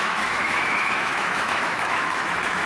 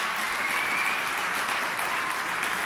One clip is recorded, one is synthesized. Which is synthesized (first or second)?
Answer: first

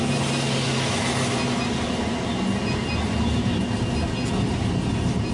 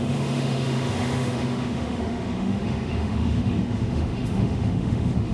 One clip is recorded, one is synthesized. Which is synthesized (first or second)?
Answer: second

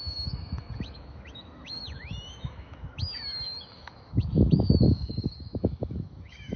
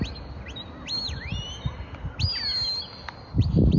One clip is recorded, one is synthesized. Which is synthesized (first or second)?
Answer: first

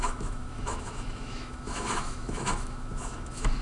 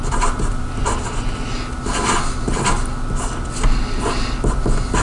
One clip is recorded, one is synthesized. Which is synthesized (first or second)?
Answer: first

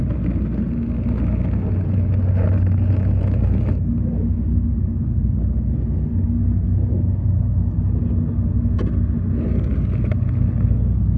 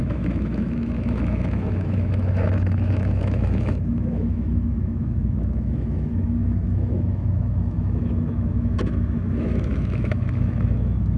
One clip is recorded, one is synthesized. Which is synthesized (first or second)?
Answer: second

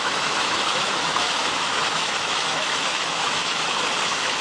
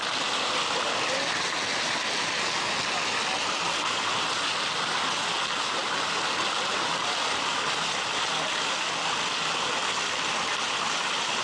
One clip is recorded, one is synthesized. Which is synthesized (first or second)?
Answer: first